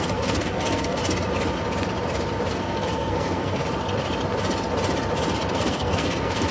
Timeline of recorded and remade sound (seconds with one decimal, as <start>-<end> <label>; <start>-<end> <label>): 0.0-1.0 remade; 1.0-2.5 recorded; 2.5-3.6 remade; 3.6-5.5 recorded; 5.5-6.5 remade